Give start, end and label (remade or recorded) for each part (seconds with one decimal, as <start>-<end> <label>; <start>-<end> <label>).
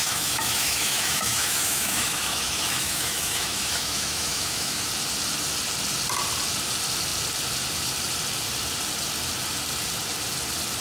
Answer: 0.0-4.9 remade; 4.9-10.8 recorded